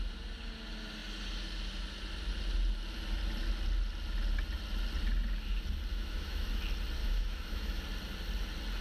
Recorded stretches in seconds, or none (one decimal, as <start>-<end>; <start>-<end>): 0.0-5.9; 6.6-7.0; 7.8-8.8

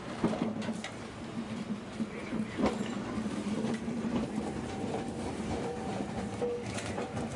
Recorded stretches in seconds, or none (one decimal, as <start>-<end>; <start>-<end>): none

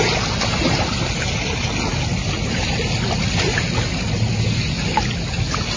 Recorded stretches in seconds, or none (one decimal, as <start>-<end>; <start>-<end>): 0.0-5.8

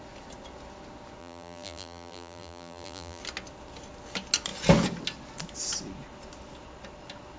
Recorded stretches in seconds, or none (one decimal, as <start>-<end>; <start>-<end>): 0.0-1.2; 3.2-7.4

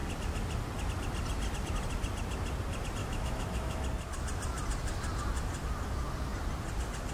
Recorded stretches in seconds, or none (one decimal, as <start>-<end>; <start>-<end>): 0.0-3.0; 3.8-7.1

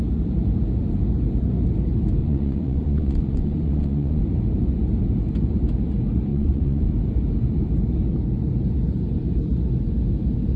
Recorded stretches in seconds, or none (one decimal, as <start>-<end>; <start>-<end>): 0.0-2.2; 4.2-6.3; 6.9-10.6

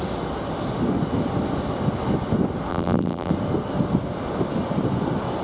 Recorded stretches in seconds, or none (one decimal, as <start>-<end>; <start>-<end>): 0.0-2.7; 3.3-5.4